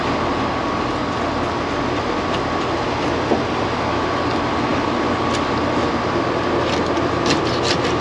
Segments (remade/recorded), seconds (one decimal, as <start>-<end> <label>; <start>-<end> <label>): 0.0-8.0 recorded